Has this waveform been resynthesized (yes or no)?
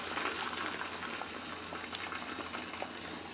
no